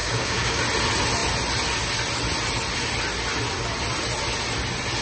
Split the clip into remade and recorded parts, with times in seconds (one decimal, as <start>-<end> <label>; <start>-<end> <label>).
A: 0.0-0.6 remade; 0.6-5.0 recorded